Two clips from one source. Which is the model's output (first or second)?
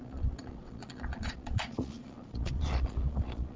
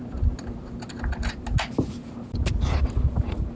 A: first